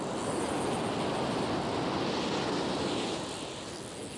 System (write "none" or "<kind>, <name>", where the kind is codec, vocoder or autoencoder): none